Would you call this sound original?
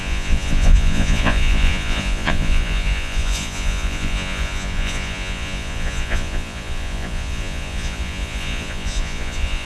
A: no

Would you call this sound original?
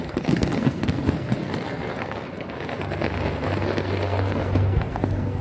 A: no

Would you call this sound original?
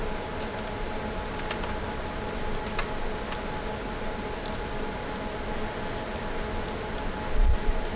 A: yes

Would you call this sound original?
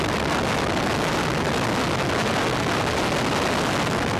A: yes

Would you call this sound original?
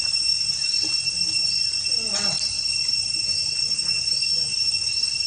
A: yes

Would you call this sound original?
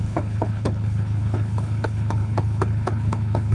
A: no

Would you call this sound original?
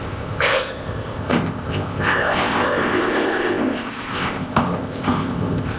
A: no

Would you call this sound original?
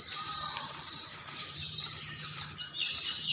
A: no